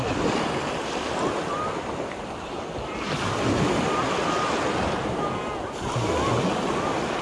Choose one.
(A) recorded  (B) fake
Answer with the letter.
A